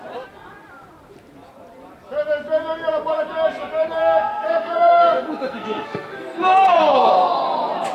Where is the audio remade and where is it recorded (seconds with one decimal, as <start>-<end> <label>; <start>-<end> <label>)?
0.0-4.0 recorded; 4.0-7.1 remade; 7.1-7.9 recorded